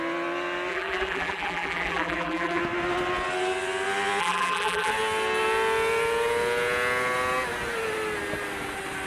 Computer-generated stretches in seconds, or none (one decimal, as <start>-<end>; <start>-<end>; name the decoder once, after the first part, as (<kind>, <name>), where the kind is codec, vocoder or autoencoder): 0.7-2.6 (vocoder, BigVGAN v2); 4.2-4.9